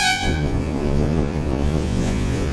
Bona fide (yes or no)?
no